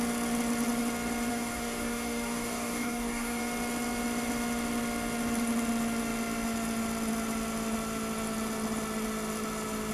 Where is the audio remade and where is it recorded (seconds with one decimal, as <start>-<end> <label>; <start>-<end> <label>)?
0.0-1.3 recorded; 1.3-3.4 remade; 3.4-9.9 recorded